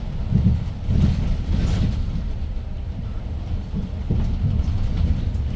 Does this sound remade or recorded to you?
recorded